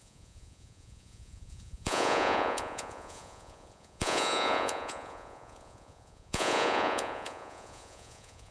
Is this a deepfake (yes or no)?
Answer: yes